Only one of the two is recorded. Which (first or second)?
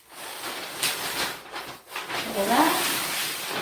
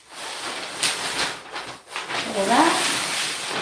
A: second